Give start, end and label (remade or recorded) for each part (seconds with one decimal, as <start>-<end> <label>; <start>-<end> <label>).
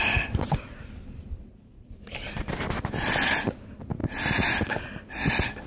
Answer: 0.0-5.7 recorded